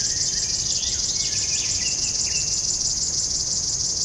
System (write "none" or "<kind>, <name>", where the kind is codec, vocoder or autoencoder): none